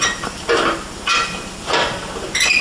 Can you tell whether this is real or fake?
fake